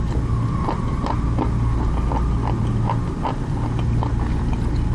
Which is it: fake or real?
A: real